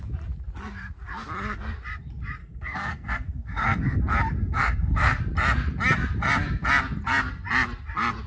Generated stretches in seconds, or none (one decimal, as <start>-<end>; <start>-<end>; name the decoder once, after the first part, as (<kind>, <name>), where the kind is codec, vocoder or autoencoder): 2.4-4.0 (codec, SNAC); 4.4-5.2